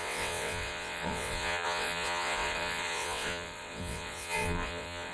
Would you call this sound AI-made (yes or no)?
yes